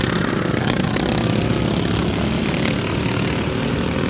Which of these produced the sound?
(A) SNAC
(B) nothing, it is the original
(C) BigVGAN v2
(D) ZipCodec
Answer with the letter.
B